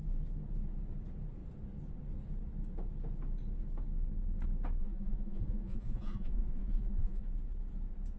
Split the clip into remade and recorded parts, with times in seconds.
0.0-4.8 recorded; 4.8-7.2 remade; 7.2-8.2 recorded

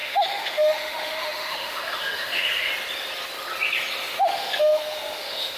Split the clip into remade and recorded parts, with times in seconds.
0.0-2.7 remade; 2.7-4.1 recorded; 4.1-5.6 remade

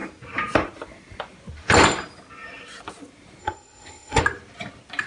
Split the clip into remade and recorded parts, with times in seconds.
0.0-3.4 recorded; 3.4-4.2 remade; 4.2-5.1 recorded

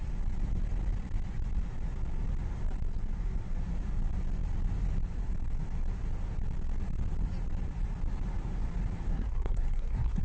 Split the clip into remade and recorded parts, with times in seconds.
0.0-9.1 recorded; 9.1-10.2 remade

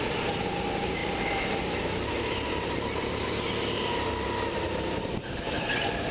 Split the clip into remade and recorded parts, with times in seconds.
0.0-6.1 recorded

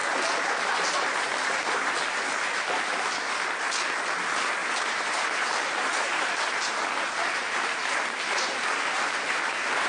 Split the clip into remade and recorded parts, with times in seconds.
0.0-4.6 recorded; 4.6-6.3 remade; 6.3-7.4 recorded; 7.4-9.5 remade; 9.5-9.9 recorded

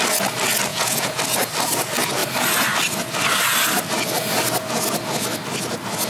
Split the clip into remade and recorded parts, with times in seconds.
0.0-0.7 recorded; 0.7-1.2 remade; 1.2-6.1 recorded

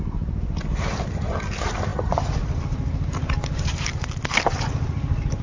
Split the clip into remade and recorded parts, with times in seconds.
0.0-5.4 recorded